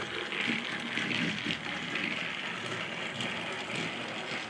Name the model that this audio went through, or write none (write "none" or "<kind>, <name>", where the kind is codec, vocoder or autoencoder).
none